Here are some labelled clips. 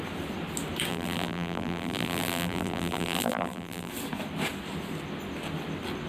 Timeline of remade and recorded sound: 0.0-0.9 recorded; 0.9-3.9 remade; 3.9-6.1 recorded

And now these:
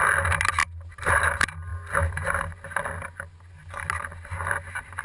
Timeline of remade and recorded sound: 0.0-0.6 recorded; 0.6-1.2 remade; 1.2-5.0 recorded

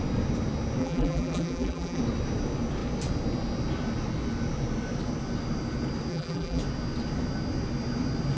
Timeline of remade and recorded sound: 0.0-0.8 recorded; 0.8-2.0 remade; 2.0-6.1 recorded; 6.1-6.6 remade; 6.6-8.4 recorded